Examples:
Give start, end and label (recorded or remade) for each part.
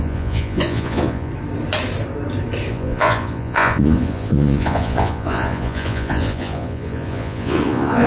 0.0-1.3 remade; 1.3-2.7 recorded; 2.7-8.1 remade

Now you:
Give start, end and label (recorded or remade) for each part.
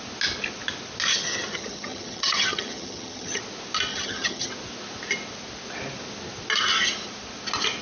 0.0-1.1 recorded; 1.1-3.4 remade; 3.4-3.9 recorded; 3.9-4.5 remade; 4.5-7.8 recorded